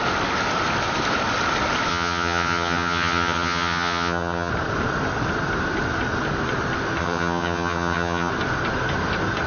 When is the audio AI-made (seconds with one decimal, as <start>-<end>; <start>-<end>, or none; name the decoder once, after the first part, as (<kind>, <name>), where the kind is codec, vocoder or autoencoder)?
1.9-4.5 (vocoder, HiFi-GAN); 7.0-8.3